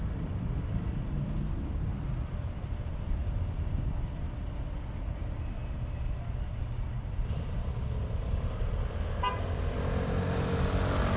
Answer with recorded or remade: recorded